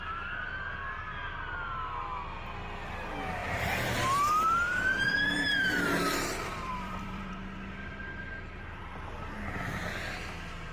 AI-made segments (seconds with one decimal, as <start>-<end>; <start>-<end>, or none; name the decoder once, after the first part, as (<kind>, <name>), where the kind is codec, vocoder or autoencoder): 3.4-7.3 (vocoder, BigVGAN v2)